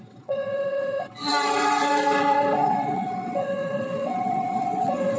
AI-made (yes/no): yes